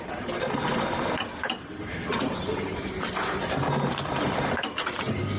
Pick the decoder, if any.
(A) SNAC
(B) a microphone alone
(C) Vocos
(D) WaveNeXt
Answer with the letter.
B